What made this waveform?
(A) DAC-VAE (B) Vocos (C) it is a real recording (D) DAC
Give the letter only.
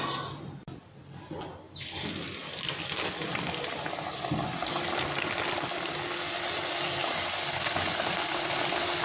C